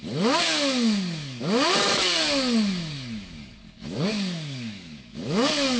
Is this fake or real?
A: fake